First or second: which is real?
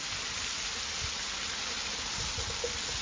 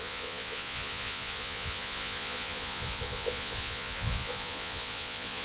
first